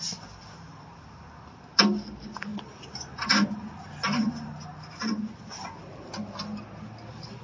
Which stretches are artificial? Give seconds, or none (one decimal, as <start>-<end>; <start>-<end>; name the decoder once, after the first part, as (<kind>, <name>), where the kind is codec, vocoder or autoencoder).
none